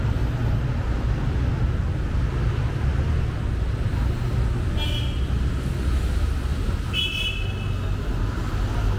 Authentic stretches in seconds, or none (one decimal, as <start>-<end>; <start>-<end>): 0.0-9.0